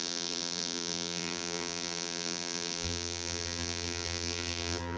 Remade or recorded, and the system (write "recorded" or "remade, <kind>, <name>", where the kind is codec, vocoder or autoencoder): remade, vocoder, BigVGAN v2